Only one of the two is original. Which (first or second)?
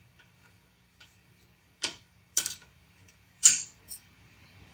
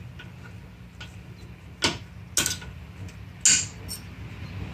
second